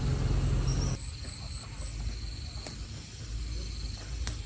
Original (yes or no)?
yes